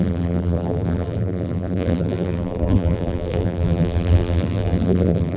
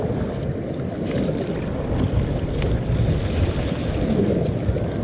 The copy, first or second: first